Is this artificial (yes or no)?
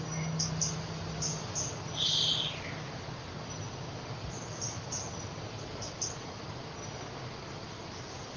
no